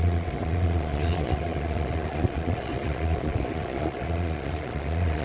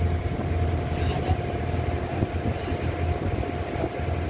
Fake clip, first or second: first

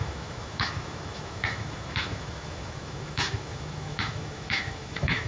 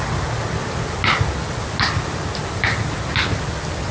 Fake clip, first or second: first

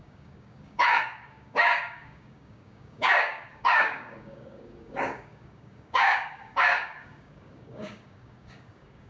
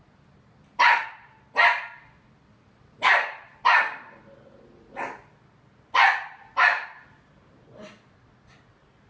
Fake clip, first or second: first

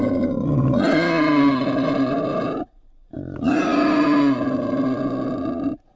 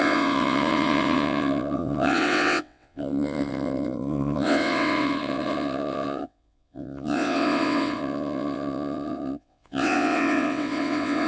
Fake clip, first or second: second